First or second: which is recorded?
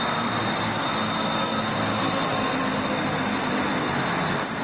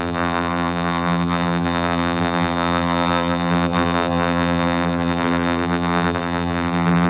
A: first